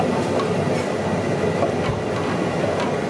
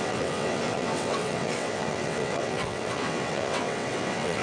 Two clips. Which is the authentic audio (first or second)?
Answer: first